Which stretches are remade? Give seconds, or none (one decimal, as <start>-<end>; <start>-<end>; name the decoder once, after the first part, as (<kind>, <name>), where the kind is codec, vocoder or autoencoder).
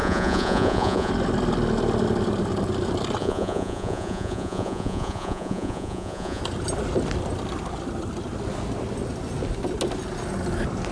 0.0-1.1 (vocoder, Vocos); 3.2-6.4